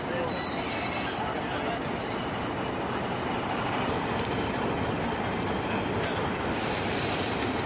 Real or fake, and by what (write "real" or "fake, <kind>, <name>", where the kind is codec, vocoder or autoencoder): real